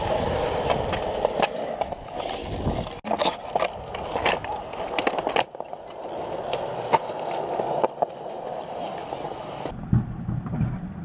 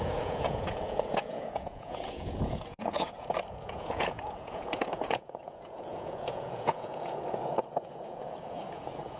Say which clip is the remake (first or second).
second